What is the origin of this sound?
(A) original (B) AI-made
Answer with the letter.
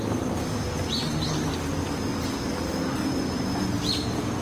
A